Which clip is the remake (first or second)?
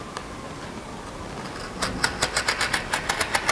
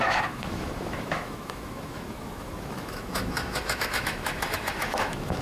second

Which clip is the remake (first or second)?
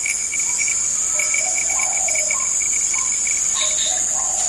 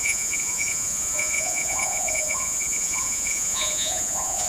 second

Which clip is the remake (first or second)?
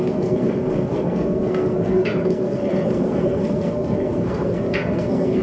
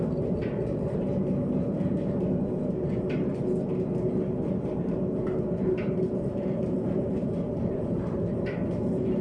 first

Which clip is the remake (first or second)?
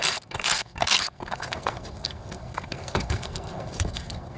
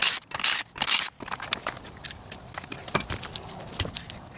first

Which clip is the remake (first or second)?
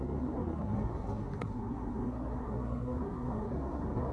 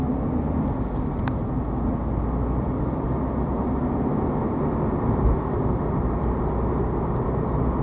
first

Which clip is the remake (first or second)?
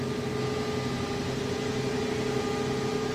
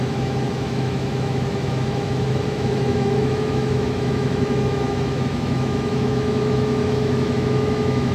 second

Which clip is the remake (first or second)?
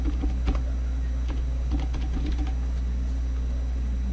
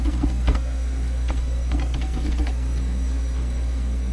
second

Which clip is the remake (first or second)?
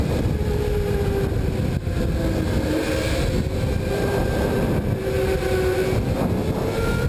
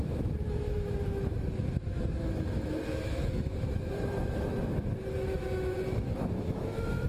second